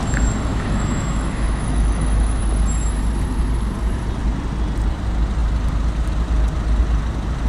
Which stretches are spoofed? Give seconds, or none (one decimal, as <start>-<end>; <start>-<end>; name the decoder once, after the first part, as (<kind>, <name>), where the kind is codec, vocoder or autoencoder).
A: 0.5-2.4 (autoencoder, DAC-VAE)